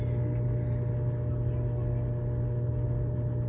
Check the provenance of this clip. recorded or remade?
recorded